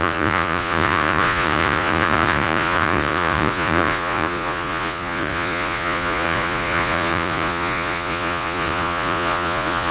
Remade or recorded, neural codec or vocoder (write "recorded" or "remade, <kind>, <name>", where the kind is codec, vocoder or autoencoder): remade, vocoder, Vocos